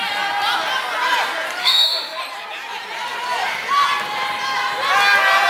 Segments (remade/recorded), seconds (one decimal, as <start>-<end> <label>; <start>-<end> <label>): 0.0-1.6 recorded; 1.6-2.2 remade; 2.2-5.5 recorded